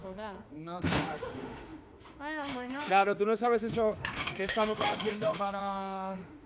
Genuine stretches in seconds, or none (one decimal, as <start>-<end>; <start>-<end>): none